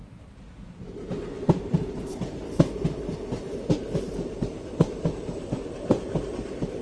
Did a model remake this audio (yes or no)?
no